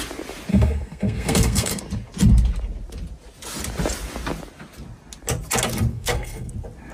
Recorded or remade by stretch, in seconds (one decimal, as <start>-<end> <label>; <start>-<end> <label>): 0.0-0.5 recorded; 0.5-1.8 remade; 1.8-5.9 recorded; 5.9-6.5 remade; 6.5-6.9 recorded